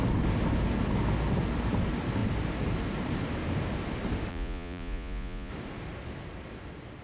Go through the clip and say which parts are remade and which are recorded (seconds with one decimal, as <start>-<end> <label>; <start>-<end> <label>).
0.0-4.3 recorded; 4.3-5.5 remade; 5.5-7.0 recorded